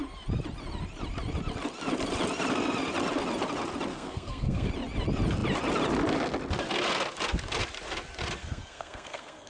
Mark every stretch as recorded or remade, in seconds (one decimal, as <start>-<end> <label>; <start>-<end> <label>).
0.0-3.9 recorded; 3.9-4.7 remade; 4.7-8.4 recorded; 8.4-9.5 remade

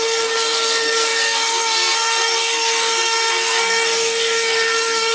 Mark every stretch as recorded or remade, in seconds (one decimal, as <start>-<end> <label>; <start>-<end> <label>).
0.0-5.1 remade

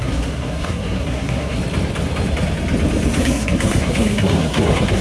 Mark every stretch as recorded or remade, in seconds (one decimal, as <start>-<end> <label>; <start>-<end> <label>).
0.0-1.6 remade; 1.6-3.2 recorded; 3.2-5.0 remade

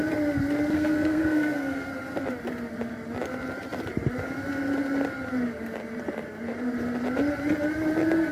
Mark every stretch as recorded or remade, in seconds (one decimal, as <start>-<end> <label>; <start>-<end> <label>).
0.0-0.7 recorded; 0.7-1.9 remade; 1.9-8.3 recorded

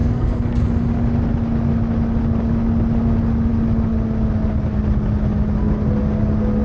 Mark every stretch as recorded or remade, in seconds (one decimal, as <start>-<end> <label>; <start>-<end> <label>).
0.0-0.7 remade; 0.7-6.6 recorded

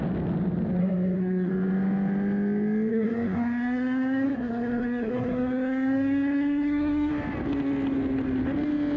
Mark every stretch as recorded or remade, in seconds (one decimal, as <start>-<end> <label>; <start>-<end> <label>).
0.0-0.8 recorded; 0.8-1.5 remade; 1.5-2.9 recorded; 2.9-7.1 remade; 7.1-9.0 recorded